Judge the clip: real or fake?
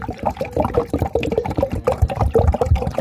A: fake